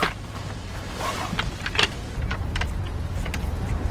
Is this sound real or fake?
fake